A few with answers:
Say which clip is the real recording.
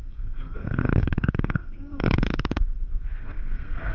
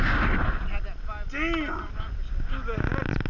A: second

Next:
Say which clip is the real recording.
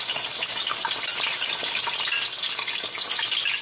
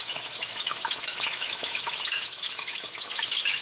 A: first